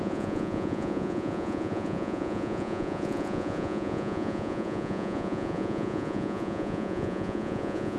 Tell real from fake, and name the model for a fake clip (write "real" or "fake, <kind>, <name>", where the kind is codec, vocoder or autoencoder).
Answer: fake, vocoder, Vocos